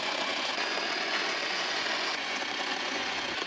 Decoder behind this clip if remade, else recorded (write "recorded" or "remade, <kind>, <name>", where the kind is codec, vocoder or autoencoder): remade, vocoder, Vocos